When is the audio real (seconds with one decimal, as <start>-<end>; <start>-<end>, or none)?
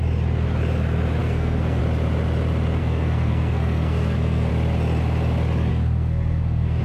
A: 0.0-1.2; 1.8-2.8; 4.5-5.7